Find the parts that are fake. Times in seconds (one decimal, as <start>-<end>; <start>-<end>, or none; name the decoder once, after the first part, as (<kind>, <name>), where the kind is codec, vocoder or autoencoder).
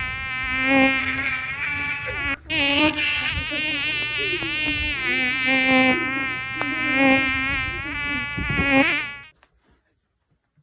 1.0-2.1 (vocoder, HiFi-GAN); 2.7-3.3